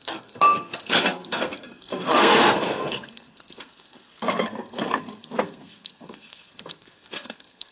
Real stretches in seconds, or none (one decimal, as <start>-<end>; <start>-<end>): none